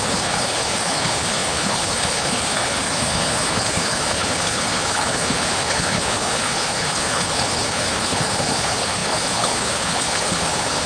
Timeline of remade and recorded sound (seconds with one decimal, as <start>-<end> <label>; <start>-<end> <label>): 0.0-10.9 remade